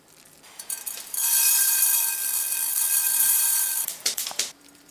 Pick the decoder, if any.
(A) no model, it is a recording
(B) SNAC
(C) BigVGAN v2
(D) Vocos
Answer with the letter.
C